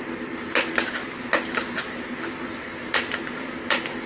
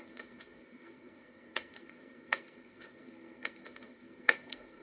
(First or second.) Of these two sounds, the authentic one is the first